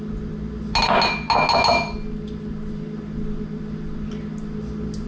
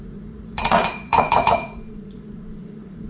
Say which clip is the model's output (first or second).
second